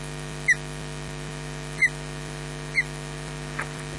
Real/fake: real